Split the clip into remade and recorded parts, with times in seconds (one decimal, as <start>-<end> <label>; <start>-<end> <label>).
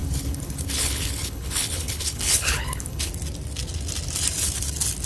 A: 0.0-3.1 remade; 3.1-5.1 recorded